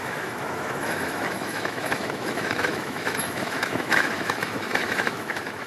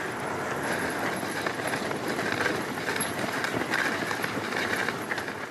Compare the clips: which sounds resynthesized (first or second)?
first